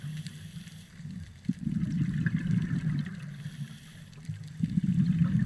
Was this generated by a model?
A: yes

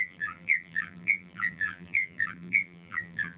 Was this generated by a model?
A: yes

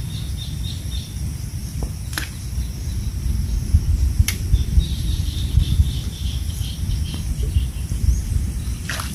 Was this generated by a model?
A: yes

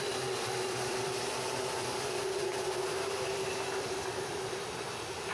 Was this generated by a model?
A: yes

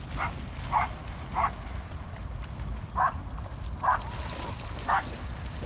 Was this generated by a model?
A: no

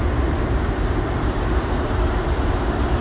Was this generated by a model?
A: yes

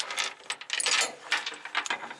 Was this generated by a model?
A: no